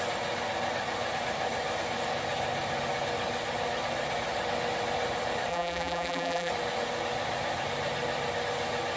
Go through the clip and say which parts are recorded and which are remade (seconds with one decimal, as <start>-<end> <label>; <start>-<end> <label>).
0.0-5.5 recorded; 5.5-6.5 remade; 6.5-9.0 recorded